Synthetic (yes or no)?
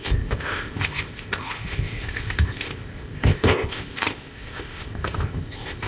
yes